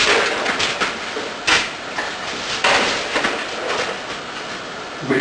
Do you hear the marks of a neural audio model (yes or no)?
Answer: no